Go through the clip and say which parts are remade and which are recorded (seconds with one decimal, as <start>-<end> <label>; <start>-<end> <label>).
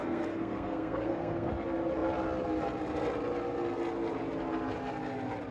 0.0-1.5 remade; 1.5-5.5 recorded